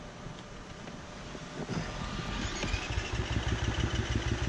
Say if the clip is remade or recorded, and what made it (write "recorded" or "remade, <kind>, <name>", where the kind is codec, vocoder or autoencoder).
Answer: recorded